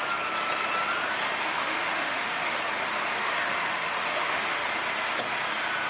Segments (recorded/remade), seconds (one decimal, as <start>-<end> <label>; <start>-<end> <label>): 0.0-1.5 recorded; 1.5-2.6 remade; 2.6-3.1 recorded; 3.1-4.7 remade; 4.7-5.9 recorded